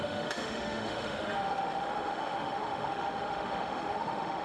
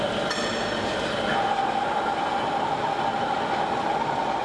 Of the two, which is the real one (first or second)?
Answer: second